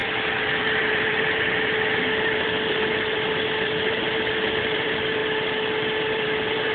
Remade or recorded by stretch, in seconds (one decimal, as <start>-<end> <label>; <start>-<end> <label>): 0.0-5.2 remade; 5.2-6.1 recorded; 6.1-6.7 remade